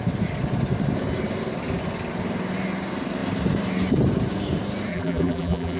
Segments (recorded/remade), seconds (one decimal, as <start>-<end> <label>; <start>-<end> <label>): 0.0-4.9 recorded; 4.9-5.8 remade